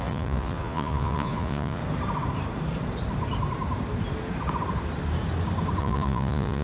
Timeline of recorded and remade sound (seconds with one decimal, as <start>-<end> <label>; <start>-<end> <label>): 0.0-1.8 remade; 1.8-5.8 recorded; 5.8-6.6 remade